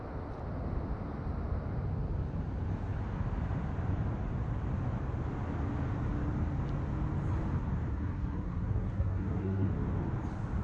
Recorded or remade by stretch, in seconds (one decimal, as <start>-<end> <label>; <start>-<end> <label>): 0.0-7.9 recorded; 7.9-9.7 remade; 9.7-10.6 recorded